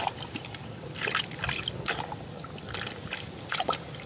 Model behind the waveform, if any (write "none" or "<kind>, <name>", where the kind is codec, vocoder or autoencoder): none